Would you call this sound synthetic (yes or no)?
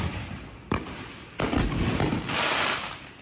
no